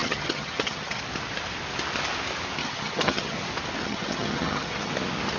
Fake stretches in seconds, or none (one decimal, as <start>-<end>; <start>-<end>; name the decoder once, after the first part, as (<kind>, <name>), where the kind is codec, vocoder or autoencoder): 0.0-1.0 (vocoder, HiFi-GAN); 2.6-3.4; 3.8-4.9